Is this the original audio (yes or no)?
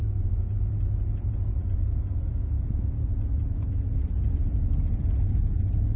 no